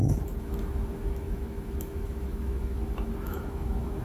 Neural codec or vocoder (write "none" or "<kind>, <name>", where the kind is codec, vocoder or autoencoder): autoencoder, DAC-VAE